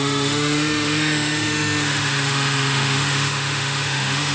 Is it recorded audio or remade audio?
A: remade